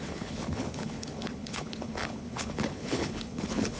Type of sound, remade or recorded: remade